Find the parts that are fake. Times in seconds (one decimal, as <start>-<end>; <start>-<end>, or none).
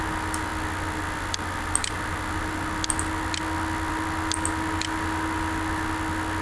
none